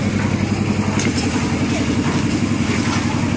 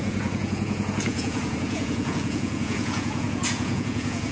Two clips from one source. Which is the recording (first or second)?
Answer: first